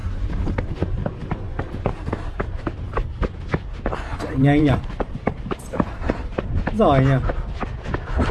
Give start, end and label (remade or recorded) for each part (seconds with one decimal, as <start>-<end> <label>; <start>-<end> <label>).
0.0-0.7 remade; 0.7-1.2 recorded; 1.2-3.1 remade; 3.1-4.1 recorded; 4.1-6.5 remade; 6.5-8.3 recorded